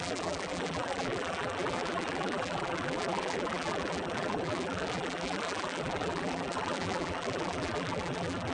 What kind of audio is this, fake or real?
fake